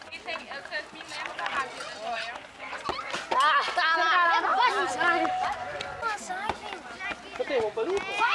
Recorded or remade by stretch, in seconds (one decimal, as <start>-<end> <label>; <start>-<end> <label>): 0.0-4.5 recorded; 4.5-6.3 remade; 6.3-8.3 recorded